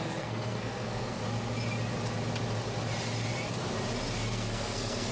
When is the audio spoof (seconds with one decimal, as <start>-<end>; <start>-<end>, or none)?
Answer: 0.0-1.2; 4.3-5.1